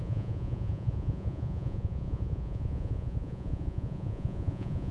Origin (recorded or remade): remade